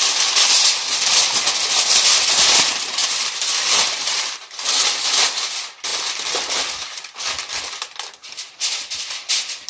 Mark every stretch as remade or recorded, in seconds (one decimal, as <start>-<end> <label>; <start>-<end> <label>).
0.0-9.7 recorded